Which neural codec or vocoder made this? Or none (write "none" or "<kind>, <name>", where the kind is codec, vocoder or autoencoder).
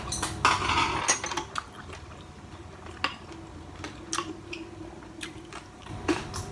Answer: none